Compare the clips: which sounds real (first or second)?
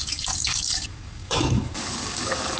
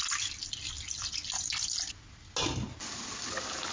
second